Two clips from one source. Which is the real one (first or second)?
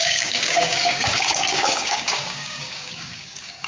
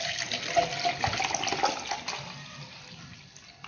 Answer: second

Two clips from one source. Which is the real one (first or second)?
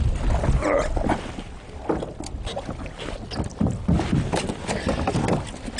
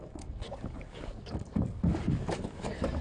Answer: first